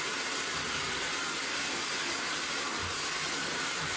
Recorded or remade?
recorded